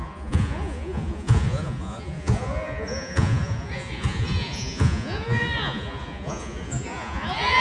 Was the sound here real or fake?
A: fake